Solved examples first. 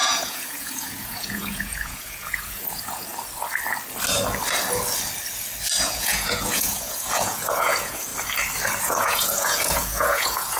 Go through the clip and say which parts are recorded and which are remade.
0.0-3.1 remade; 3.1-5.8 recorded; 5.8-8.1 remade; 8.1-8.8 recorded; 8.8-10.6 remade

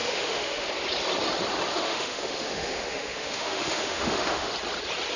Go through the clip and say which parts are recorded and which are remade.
0.0-0.7 remade; 0.7-1.7 recorded; 1.7-4.5 remade; 4.5-5.2 recorded